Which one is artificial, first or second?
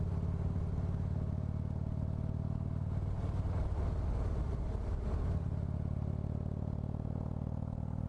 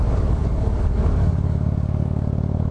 second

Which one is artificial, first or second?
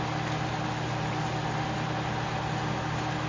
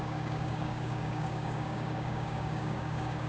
second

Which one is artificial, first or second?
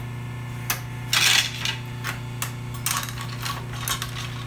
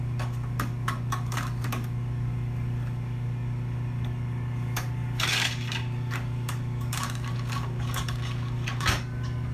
second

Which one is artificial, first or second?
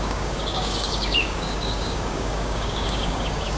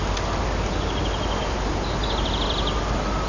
first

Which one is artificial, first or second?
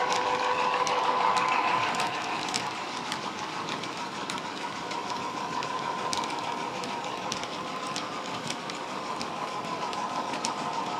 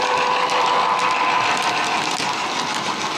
first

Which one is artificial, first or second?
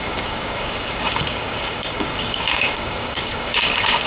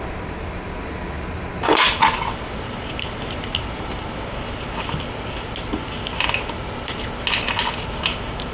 first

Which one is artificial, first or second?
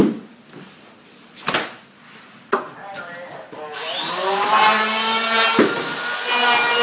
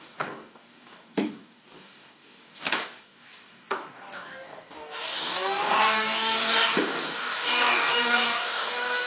second